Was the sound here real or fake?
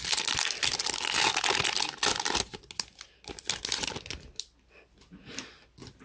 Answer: real